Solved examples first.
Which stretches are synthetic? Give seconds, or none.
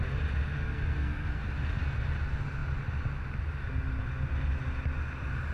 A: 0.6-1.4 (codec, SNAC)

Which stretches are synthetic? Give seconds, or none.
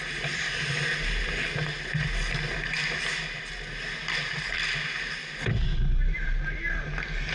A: none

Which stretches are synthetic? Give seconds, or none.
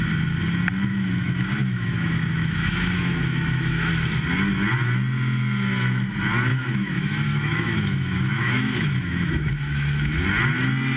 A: 0.9-3.9 (autoencoder, DAC-VAE); 6.5-10.2